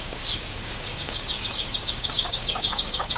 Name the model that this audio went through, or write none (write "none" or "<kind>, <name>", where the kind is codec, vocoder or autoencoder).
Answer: codec, DAC